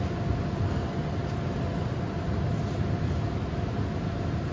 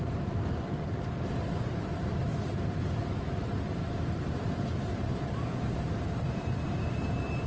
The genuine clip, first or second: first